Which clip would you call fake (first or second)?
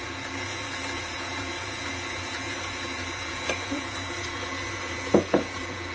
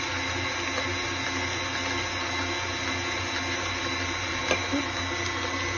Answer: first